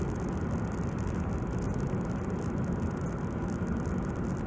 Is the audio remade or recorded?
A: recorded